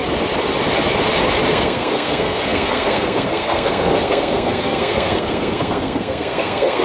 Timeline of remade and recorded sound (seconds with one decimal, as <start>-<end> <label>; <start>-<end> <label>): 0.0-1.5 recorded; 1.5-6.8 remade

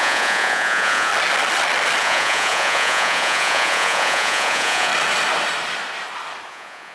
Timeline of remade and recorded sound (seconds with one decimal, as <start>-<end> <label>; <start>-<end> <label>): 0.0-1.1 remade; 1.1-2.0 recorded; 2.0-4.9 remade; 4.9-6.5 recorded; 6.5-6.9 remade

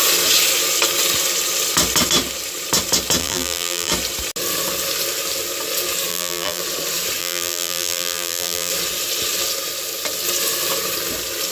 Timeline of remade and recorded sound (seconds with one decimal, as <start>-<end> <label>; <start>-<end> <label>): 0.0-3.2 recorded; 3.2-3.9 remade; 3.9-6.1 recorded; 6.1-6.6 remade; 6.6-7.2 recorded; 7.2-8.7 remade; 8.7-11.5 recorded